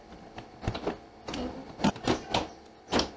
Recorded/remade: recorded